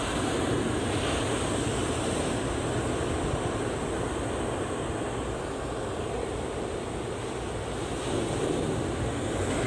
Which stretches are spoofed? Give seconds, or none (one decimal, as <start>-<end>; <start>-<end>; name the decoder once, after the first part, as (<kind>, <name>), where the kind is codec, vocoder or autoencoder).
1.8-2.5 (vocoder, BigVGAN v2)